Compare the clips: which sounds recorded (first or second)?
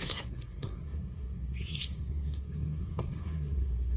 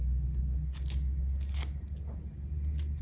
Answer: second